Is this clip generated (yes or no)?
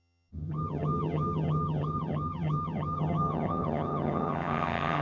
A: yes